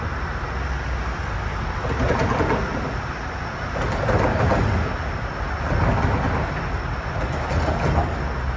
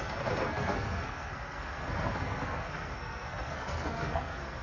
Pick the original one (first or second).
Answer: first